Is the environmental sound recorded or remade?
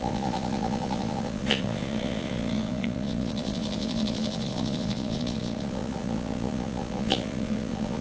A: remade